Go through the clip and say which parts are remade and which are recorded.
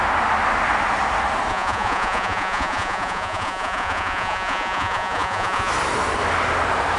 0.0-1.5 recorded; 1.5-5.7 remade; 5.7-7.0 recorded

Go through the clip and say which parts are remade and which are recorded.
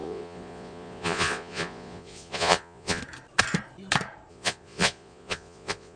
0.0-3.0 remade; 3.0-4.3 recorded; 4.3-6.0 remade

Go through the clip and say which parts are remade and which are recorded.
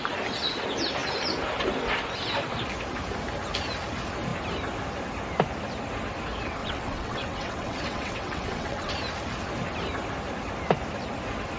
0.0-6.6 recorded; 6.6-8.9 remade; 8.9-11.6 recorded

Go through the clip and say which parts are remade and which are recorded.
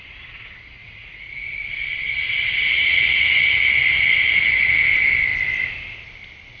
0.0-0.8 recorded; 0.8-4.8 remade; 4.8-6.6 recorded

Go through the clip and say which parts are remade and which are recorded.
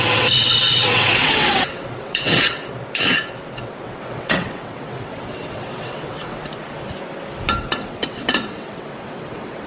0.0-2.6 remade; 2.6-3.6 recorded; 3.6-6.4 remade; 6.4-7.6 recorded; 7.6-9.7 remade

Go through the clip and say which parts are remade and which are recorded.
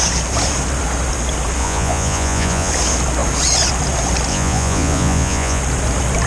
0.0-1.6 recorded; 1.6-2.7 remade; 2.7-4.3 recorded; 4.3-5.6 remade; 5.6-6.3 recorded